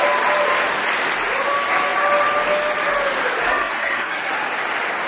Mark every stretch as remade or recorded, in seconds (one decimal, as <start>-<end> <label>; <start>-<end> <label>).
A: 0.0-3.5 recorded; 3.5-4.3 remade; 4.3-5.1 recorded